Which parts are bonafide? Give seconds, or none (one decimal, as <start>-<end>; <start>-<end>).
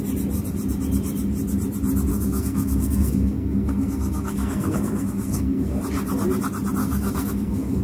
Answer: 0.0-2.1; 5.8-6.8